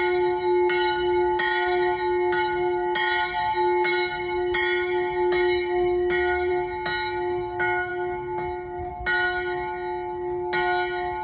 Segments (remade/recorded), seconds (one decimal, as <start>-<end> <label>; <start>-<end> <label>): 0.0-11.2 recorded